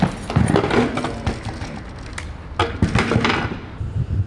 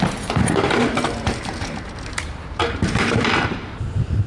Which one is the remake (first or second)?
second